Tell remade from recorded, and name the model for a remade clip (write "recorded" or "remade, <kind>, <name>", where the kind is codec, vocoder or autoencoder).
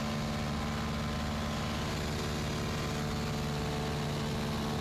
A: recorded